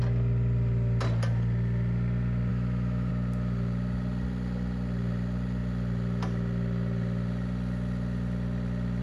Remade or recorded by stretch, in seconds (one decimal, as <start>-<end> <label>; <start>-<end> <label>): 0.0-2.5 recorded; 2.5-3.1 remade; 3.1-9.0 recorded